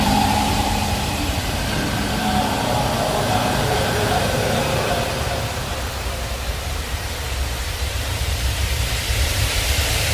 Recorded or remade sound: remade